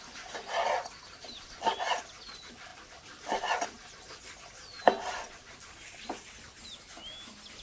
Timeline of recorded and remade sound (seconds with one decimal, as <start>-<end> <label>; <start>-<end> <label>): 0.0-7.6 recorded